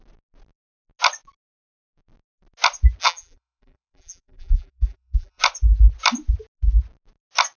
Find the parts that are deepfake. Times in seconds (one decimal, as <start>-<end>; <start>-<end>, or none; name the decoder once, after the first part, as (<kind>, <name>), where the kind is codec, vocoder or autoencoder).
3.0-5.4 (vocoder, BigVGAN v2)